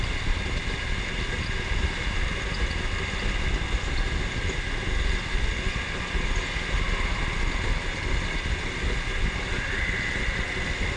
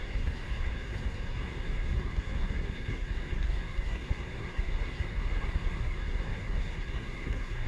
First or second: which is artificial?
second